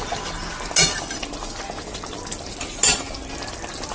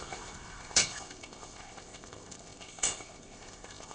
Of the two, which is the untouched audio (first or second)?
first